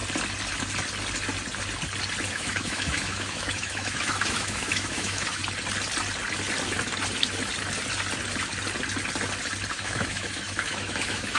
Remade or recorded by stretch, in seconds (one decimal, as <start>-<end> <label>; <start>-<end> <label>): 0.0-2.3 recorded; 2.3-5.4 remade; 5.4-9.7 recorded; 9.7-11.4 remade